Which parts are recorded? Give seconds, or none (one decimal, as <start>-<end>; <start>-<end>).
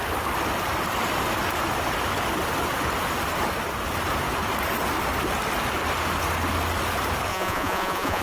0.0-7.3